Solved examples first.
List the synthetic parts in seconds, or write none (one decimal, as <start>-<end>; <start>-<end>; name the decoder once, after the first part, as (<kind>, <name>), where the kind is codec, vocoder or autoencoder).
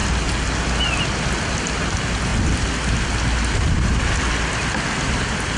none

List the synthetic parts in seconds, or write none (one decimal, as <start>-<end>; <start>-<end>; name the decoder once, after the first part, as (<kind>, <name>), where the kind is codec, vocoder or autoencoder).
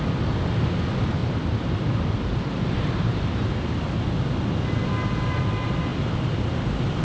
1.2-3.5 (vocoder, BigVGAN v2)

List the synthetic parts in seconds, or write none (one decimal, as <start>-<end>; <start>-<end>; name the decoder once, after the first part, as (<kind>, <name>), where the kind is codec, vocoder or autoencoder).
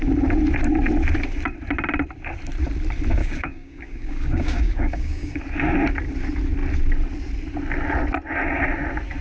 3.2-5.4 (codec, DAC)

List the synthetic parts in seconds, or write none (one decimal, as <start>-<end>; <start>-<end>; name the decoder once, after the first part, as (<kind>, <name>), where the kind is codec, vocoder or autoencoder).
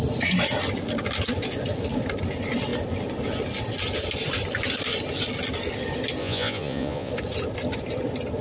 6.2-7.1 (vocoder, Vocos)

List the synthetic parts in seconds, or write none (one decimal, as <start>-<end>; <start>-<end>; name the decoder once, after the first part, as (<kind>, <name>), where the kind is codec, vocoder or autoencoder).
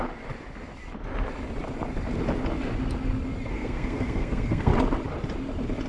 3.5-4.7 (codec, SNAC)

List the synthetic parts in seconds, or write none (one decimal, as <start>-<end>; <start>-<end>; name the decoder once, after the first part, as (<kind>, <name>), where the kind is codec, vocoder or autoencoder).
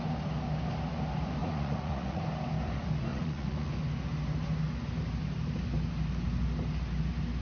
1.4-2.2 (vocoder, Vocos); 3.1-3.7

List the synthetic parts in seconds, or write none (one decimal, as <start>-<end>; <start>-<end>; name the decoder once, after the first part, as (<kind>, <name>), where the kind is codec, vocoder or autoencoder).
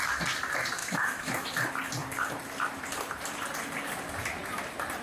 0.8-1.5 (autoencoder, DAC-VAE)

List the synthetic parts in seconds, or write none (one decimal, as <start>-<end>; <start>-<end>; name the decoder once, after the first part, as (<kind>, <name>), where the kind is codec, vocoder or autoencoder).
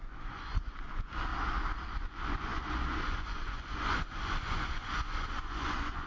0.0-1.3 (vocoder, Vocos); 2.0-6.1